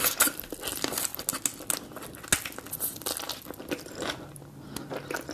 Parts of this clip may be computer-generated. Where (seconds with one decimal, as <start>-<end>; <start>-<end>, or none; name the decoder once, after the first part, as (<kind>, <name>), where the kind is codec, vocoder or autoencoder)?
none